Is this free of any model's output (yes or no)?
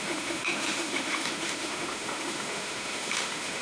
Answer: no